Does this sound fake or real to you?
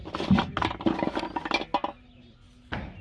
real